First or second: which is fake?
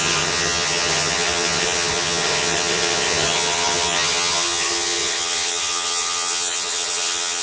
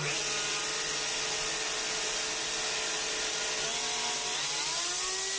first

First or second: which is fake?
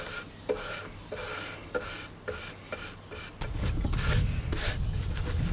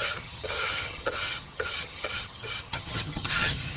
second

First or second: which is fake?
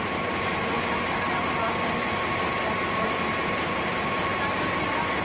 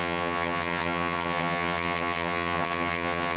second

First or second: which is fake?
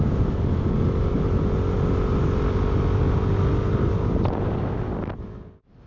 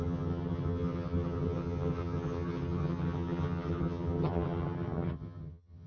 second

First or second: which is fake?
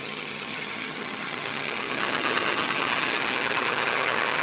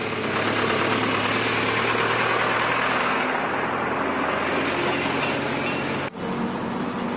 first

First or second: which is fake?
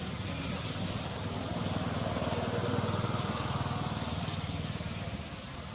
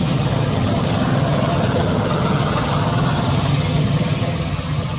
second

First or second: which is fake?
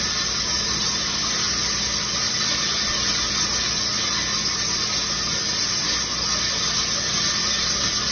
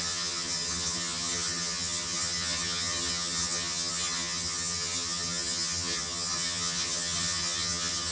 second